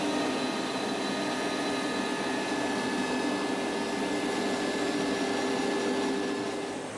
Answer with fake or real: real